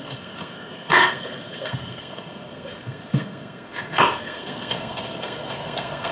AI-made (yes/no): yes